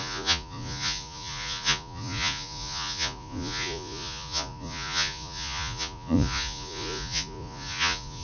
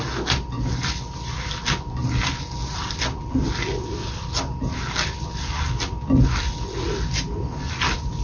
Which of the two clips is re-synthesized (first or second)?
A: first